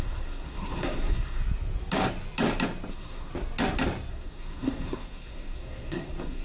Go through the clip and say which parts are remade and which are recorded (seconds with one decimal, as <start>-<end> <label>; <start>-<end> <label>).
0.0-1.4 remade; 1.4-2.9 recorded; 2.9-3.3 remade; 3.3-4.1 recorded; 4.1-6.4 remade